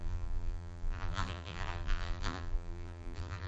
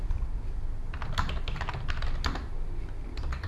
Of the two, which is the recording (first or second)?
second